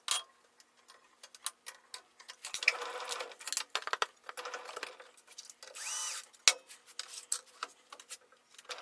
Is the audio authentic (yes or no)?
yes